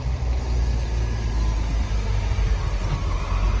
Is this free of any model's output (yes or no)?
yes